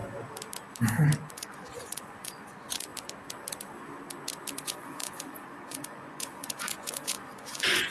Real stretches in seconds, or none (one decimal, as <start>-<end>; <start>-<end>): 0.0-1.3; 2.9-4.5